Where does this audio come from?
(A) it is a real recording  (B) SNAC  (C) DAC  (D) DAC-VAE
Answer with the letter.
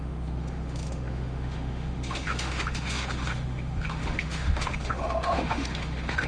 D